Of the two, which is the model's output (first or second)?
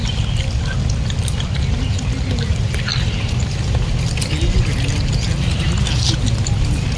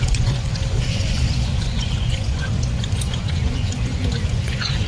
second